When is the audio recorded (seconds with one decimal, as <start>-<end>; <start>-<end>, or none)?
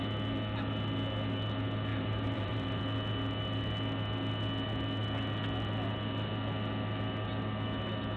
0.0-1.9; 2.8-8.2